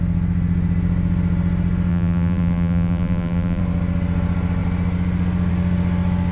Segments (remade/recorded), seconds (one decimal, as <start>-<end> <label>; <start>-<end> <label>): 0.0-1.9 recorded; 1.9-3.6 remade; 3.6-6.3 recorded